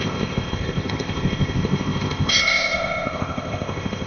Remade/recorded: remade